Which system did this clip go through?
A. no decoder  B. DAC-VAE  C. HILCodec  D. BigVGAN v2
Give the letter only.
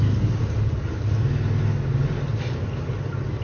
A